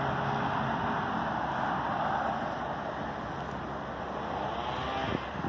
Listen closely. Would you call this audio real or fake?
real